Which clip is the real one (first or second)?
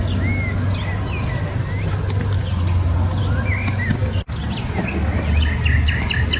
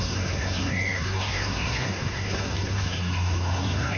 first